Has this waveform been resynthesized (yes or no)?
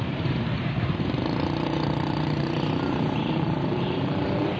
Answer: yes